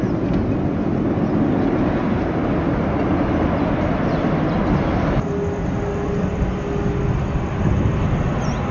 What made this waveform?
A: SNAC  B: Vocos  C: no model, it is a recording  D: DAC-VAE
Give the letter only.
C